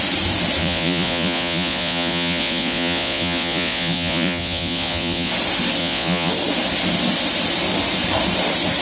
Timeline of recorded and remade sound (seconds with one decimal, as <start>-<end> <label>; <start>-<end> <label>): 0.0-0.6 recorded; 0.6-5.3 remade; 5.3-5.8 recorded; 5.8-6.3 remade; 6.3-8.8 recorded